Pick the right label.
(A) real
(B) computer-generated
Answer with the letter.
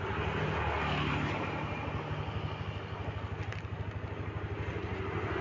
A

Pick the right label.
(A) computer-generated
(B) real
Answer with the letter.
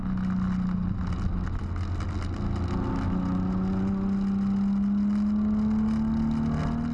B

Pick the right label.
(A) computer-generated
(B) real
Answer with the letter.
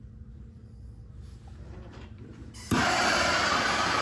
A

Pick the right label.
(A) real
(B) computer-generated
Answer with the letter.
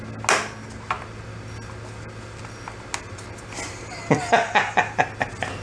A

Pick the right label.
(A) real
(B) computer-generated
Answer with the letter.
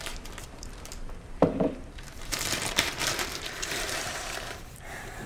B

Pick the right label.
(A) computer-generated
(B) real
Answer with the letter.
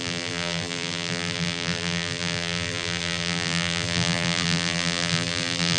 A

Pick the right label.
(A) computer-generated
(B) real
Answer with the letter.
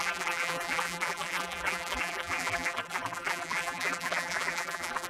A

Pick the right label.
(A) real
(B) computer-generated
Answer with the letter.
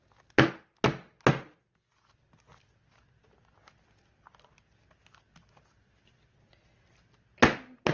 A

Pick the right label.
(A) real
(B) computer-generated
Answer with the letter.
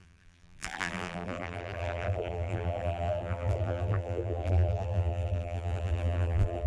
B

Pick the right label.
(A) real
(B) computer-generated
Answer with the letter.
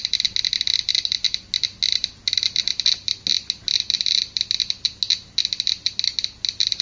A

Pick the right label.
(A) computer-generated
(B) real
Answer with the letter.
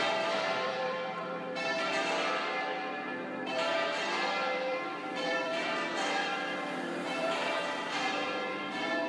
A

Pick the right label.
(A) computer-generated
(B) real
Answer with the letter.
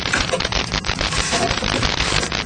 A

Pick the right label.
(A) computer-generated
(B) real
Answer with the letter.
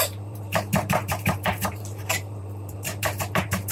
A